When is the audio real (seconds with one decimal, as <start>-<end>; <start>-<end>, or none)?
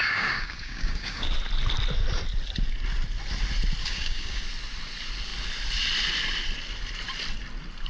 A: 1.3-3.8; 4.4-7.9